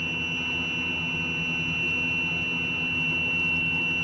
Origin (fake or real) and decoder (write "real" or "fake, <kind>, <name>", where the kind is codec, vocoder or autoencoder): real